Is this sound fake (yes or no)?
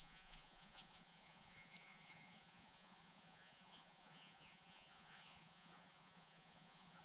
yes